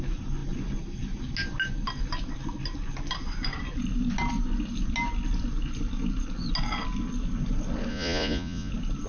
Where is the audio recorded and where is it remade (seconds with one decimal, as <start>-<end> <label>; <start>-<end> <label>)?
0.0-7.9 recorded; 7.9-8.7 remade; 8.7-9.1 recorded